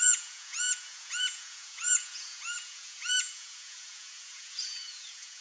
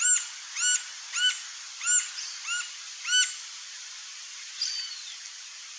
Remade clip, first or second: first